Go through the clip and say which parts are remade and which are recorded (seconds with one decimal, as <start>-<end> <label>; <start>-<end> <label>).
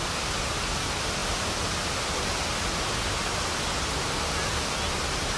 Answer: 0.0-5.4 recorded